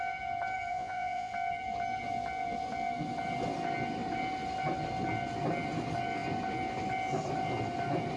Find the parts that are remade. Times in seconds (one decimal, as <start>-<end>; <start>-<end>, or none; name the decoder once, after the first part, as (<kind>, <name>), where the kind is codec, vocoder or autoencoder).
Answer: 0.7-1.3 (vocoder, Vocos)